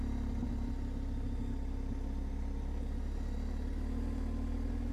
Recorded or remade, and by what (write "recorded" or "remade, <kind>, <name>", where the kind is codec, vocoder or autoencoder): recorded